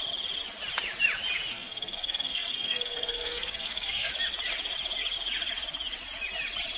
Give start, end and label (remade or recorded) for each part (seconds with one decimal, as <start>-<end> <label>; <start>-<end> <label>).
0.0-1.5 recorded; 1.5-4.1 remade; 4.1-6.8 recorded